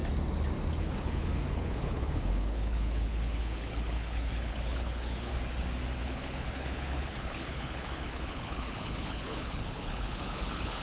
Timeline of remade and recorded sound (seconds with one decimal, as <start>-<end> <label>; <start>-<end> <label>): 0.0-0.8 recorded; 0.8-5.3 remade; 5.3-6.0 recorded; 6.0-10.8 remade